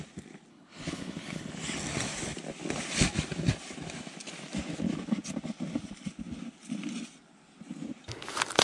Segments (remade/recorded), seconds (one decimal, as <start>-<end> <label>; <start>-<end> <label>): 0.0-0.5 recorded; 0.5-1.5 remade; 1.5-8.6 recorded

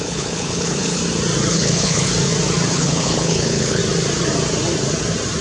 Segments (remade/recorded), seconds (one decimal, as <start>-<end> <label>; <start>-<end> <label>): 0.0-1.0 remade; 1.0-1.5 recorded; 1.5-2.1 remade; 2.1-2.7 recorded; 2.7-3.8 remade; 3.8-5.4 recorded

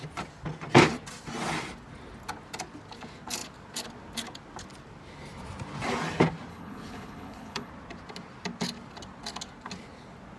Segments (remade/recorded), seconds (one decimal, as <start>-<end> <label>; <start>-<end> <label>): 0.0-6.5 recorded; 6.5-7.7 remade; 7.7-10.4 recorded